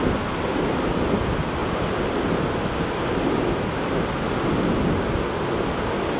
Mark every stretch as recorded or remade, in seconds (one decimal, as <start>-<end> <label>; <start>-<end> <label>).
0.0-6.2 recorded